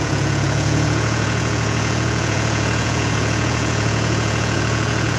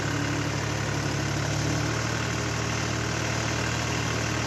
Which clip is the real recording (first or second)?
second